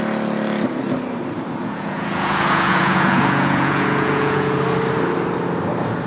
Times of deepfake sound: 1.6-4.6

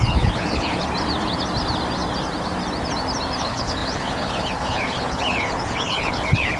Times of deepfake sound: 0.0-0.8; 3.4-6.6

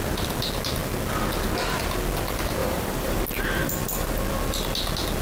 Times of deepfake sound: 2.6-3.2

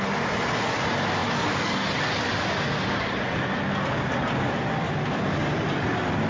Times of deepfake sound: none